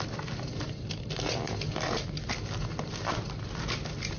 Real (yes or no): yes